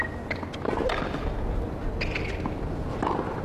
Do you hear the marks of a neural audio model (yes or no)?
no